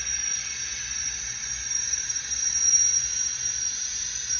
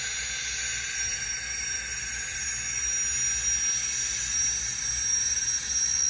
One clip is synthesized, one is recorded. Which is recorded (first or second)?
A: second